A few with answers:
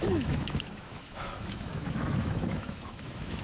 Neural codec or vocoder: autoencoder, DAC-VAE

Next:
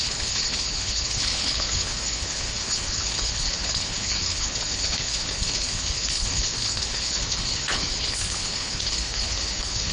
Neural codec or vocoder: codec, HILCodec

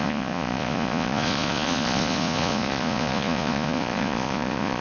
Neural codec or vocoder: vocoder, Vocos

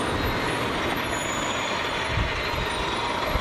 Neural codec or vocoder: none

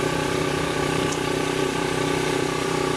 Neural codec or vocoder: vocoder, BigVGAN v2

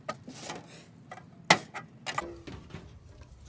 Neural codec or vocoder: none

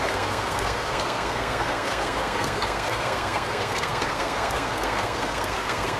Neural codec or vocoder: codec, SNAC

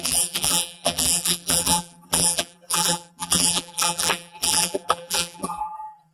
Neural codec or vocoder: vocoder, BigVGAN v2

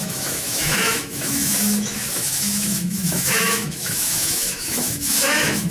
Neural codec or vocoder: autoencoder, DAC-VAE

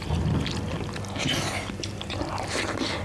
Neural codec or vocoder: none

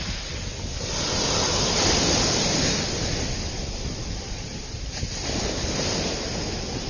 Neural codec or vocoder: none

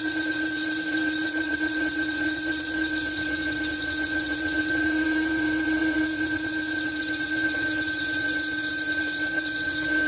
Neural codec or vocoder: vocoder, WaveNeXt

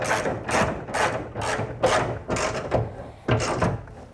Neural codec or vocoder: none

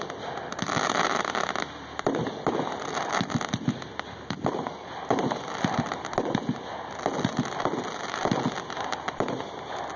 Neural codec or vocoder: none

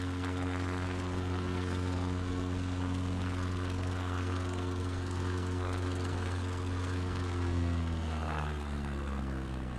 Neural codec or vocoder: codec, SNAC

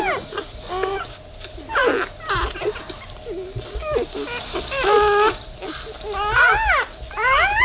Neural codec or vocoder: none